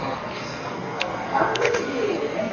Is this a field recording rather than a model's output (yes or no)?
no